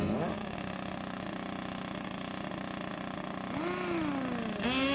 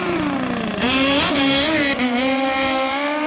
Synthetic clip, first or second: second